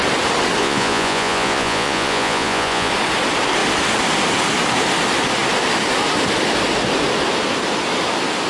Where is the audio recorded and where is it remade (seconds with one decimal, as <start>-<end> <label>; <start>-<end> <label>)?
0.0-0.6 recorded; 0.6-2.9 remade; 2.9-8.5 recorded